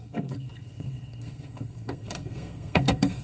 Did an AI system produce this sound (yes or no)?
yes